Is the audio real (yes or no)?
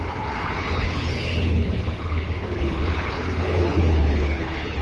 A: no